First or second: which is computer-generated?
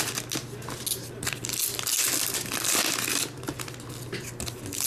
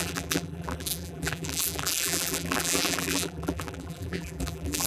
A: second